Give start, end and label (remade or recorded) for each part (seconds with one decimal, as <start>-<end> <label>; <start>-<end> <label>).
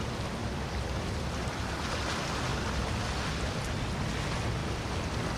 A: 0.0-0.4 recorded; 0.4-1.9 remade; 1.9-5.4 recorded